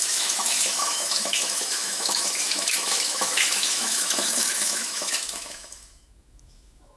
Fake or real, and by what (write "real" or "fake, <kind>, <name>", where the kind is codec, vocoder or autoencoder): fake, autoencoder, DAC-VAE